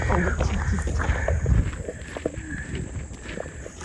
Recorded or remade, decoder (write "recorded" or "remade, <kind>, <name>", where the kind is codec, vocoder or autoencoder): recorded